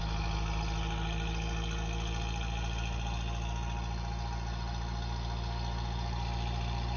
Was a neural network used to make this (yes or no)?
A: no